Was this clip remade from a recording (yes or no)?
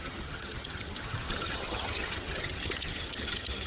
yes